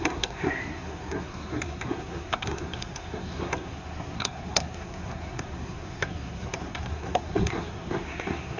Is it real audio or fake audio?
fake